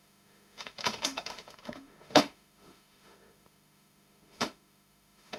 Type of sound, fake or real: fake